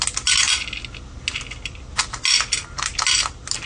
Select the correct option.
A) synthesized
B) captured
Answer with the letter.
B